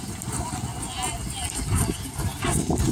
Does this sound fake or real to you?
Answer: real